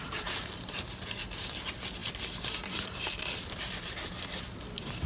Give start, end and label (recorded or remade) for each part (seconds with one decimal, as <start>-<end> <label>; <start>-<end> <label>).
0.0-5.1 remade

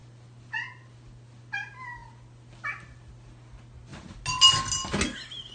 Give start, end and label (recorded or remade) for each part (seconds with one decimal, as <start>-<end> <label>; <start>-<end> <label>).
0.0-5.5 recorded

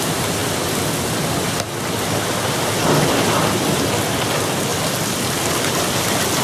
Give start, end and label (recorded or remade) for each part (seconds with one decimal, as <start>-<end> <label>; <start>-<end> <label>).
0.0-6.4 recorded

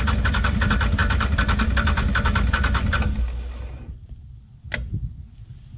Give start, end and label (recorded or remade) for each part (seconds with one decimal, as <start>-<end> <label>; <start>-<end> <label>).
0.0-5.8 recorded

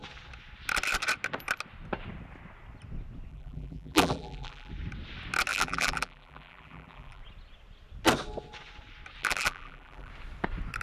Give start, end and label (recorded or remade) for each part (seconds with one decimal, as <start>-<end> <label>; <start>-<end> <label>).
0.0-3.3 recorded; 3.3-4.7 remade; 4.7-5.5 recorded; 5.5-7.2 remade; 7.2-9.2 recorded; 9.2-10.1 remade; 10.1-10.8 recorded

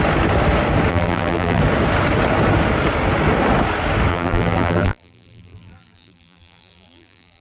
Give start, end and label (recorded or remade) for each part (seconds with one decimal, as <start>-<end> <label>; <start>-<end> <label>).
0.0-0.9 recorded; 0.9-1.6 remade; 1.6-4.1 recorded; 4.1-7.4 remade